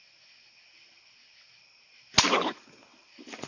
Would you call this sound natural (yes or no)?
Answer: yes